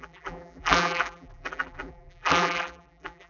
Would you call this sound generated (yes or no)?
yes